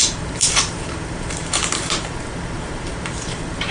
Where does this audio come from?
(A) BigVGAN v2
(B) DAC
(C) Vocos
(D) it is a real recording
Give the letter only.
A